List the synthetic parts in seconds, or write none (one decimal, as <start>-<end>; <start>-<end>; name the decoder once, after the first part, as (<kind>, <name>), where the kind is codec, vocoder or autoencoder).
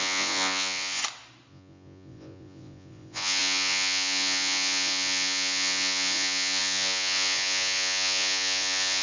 0.0-1.0 (vocoder, Vocos); 1.5-9.0